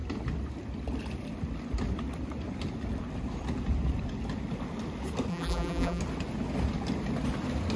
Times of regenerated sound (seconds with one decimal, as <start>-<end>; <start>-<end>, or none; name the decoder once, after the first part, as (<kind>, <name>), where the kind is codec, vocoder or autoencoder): 5.3-6.0 (vocoder, BigVGAN v2)